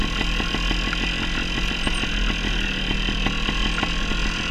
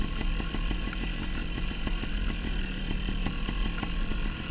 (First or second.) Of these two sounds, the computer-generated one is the second